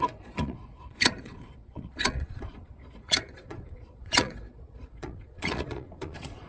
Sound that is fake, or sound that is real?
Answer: fake